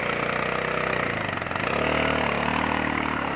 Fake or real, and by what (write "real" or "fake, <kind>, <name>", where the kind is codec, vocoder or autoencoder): real